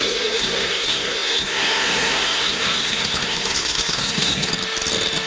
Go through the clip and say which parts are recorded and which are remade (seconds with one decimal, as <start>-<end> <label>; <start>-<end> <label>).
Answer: 0.0-4.5 remade; 4.5-5.3 recorded